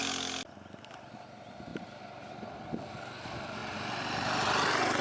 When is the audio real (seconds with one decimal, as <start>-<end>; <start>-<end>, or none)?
0.0-1.7; 2.6-5.0